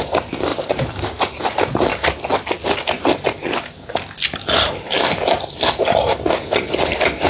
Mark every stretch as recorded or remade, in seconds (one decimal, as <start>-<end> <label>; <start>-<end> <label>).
0.0-1.9 remade; 1.9-5.5 recorded; 5.5-7.3 remade